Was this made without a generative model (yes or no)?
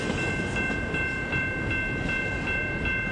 yes